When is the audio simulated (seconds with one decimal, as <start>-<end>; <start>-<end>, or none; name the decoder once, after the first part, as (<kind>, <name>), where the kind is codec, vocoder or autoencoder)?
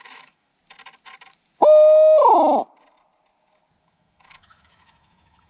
0.0-0.5 (autoencoder, DAC-VAE); 3.8-5.5